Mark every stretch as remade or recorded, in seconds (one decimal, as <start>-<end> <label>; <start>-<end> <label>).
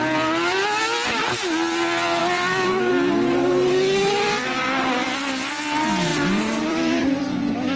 0.0-2.2 recorded; 2.2-2.9 remade; 2.9-6.1 recorded; 6.1-7.8 remade